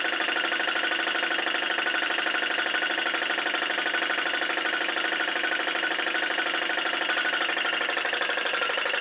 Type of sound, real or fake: real